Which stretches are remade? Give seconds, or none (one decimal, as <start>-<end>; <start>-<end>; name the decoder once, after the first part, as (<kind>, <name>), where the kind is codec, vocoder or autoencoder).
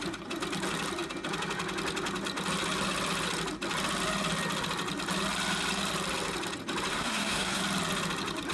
6.9-7.6 (codec, SNAC)